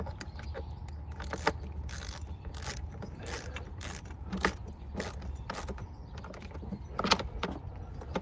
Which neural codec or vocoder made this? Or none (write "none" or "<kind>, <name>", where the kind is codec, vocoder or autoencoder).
none